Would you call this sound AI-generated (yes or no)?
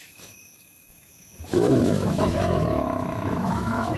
yes